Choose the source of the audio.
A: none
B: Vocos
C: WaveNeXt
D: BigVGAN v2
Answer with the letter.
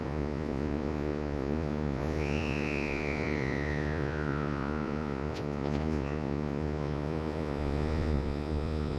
B